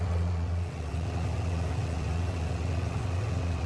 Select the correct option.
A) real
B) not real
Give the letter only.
B